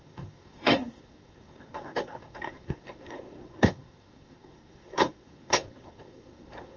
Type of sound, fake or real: fake